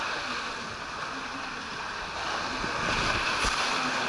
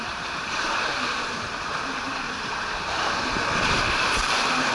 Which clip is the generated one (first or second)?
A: second